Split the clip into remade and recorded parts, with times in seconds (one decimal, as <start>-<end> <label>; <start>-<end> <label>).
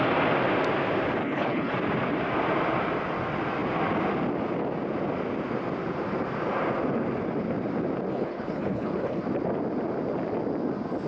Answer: 0.0-1.2 recorded; 1.2-1.7 remade; 1.7-8.1 recorded; 8.1-9.2 remade; 9.2-11.1 recorded